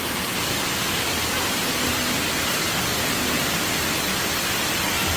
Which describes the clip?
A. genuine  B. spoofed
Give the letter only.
A